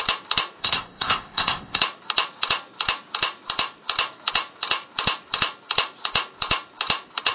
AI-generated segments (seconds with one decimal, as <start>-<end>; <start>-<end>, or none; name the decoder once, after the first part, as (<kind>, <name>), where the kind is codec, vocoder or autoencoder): 0.6-1.8 (codec, ZipCodec)